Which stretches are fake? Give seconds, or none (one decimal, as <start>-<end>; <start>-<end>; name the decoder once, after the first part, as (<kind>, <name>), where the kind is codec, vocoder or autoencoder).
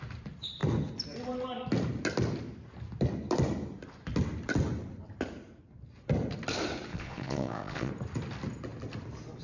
6.9-7.9 (vocoder, Vocos)